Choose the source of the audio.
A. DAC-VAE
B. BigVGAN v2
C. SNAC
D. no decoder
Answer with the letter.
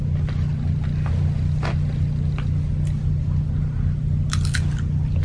D